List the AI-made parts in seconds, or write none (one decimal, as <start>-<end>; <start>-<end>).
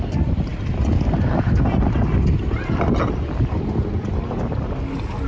none